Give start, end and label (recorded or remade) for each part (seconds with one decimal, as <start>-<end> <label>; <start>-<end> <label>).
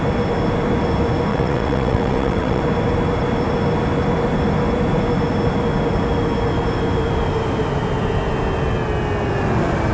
0.0-1.3 recorded; 1.3-2.6 remade; 2.6-9.9 recorded